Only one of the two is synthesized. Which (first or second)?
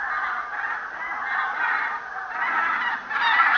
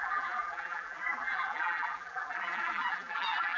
second